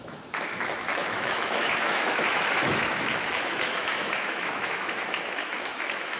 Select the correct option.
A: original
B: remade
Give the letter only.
B